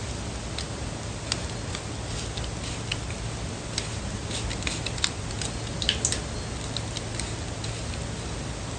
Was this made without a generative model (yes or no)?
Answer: yes